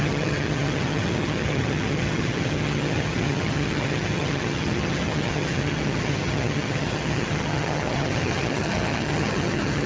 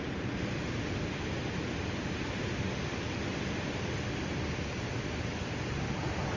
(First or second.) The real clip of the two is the second